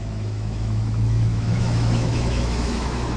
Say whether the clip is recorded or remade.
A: remade